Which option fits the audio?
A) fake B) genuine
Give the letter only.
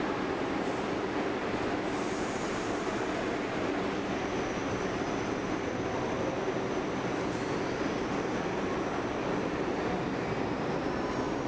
B